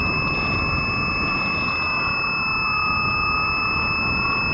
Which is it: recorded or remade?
recorded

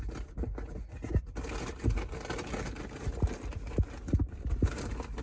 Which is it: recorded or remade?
recorded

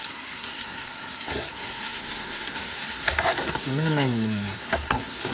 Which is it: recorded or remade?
remade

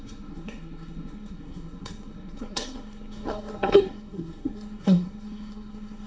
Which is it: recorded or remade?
remade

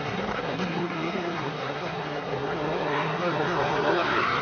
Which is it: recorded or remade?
remade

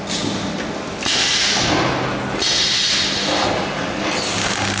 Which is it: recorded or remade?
recorded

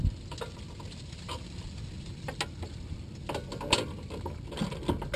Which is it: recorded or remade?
recorded